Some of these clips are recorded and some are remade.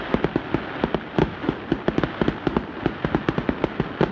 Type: recorded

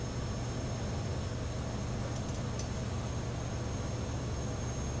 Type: recorded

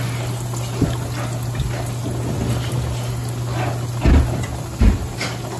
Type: recorded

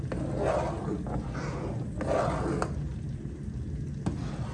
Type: recorded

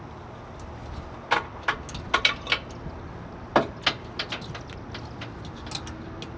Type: recorded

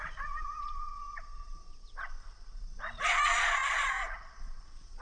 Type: remade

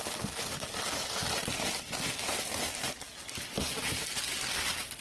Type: recorded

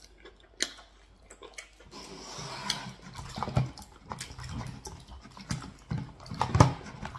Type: recorded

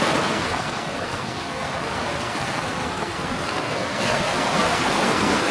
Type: remade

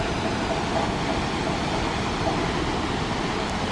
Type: recorded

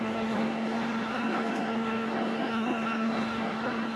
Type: remade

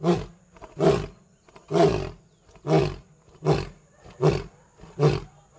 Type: recorded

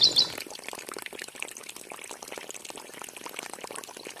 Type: recorded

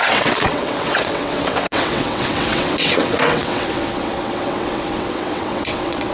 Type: remade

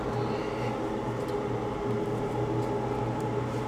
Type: recorded